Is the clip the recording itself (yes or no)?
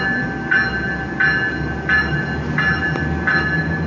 yes